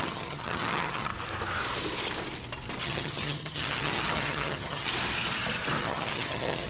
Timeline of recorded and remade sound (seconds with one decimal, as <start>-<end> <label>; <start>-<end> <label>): 0.0-1.1 remade; 1.1-2.8 recorded; 2.8-4.9 remade; 4.9-5.8 recorded; 5.8-6.7 remade